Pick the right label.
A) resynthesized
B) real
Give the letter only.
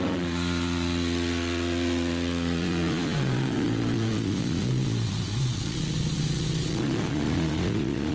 A